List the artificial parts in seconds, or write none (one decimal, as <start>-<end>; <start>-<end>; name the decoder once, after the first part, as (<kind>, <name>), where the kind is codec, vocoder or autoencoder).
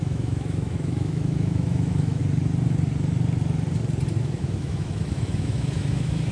0.0-2.2 (autoencoder, DAC-VAE); 4.2-6.3